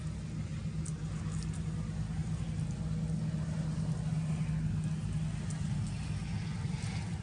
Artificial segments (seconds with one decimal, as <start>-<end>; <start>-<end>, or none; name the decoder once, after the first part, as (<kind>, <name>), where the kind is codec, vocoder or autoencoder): none